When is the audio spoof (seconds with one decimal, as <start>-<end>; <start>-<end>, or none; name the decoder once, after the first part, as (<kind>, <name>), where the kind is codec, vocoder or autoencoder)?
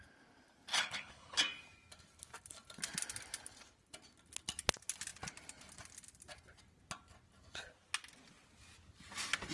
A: 0.7-1.4 (codec, HILCodec)